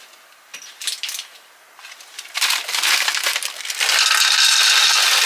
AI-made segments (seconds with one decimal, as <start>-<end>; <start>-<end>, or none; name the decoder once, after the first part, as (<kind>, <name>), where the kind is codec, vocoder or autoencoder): none